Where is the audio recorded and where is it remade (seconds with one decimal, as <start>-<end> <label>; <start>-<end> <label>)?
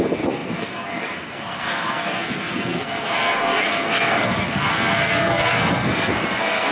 0.0-6.7 remade